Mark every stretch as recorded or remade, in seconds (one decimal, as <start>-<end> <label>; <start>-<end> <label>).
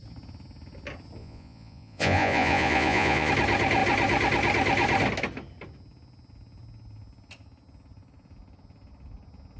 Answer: 0.0-1.2 recorded; 1.2-3.3 remade; 3.3-9.6 recorded